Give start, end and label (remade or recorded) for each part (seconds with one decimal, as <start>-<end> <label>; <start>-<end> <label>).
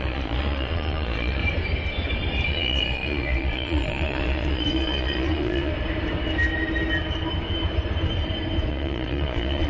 0.0-1.4 remade; 1.4-2.5 recorded; 2.5-5.7 remade; 5.7-8.7 recorded; 8.7-9.7 remade